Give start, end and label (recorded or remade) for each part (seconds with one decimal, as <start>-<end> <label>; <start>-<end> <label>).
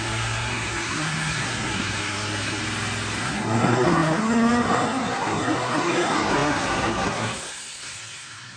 0.0-2.6 remade; 2.6-3.2 recorded; 3.2-8.6 remade